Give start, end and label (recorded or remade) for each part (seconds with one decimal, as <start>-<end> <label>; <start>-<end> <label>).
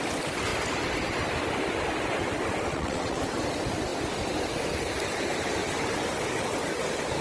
0.0-2.7 recorded; 2.7-3.2 remade; 3.2-7.2 recorded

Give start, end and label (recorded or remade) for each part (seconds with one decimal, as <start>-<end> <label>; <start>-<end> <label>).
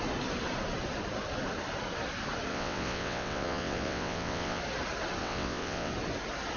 0.0-2.5 recorded; 2.5-4.6 remade; 4.6-5.2 recorded; 5.2-5.9 remade; 5.9-6.6 recorded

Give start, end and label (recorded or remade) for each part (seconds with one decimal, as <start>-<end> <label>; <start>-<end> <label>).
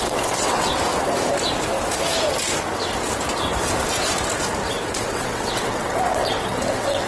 0.0-0.7 remade; 0.7-5.0 recorded; 5.0-7.1 remade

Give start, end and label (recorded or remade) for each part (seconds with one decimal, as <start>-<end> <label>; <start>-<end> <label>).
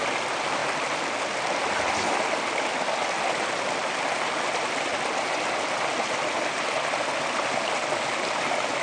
0.0-8.8 recorded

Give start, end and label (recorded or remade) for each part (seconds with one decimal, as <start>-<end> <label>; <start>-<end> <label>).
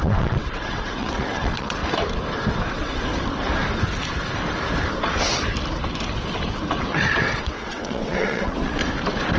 0.0-1.8 remade; 1.8-2.7 recorded; 2.7-3.1 remade; 3.1-7.4 recorded; 7.4-8.8 remade; 8.8-9.4 recorded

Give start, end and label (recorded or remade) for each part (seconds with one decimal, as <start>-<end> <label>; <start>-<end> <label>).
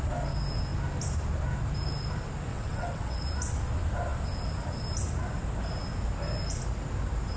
0.0-2.5 recorded; 2.5-3.2 remade; 3.2-7.4 recorded